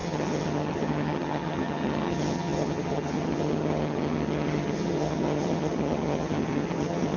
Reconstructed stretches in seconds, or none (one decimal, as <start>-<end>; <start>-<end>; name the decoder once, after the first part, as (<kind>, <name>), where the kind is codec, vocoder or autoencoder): 0.0-7.2 (vocoder, HiFi-GAN)